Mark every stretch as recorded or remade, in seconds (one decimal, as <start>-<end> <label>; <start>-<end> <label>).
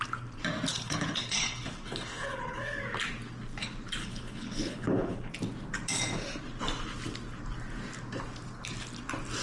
0.0-0.7 recorded; 0.7-2.8 remade; 2.8-4.0 recorded; 4.0-5.3 remade; 5.3-9.4 recorded